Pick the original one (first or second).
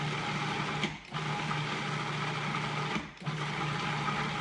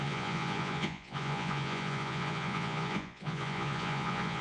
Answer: first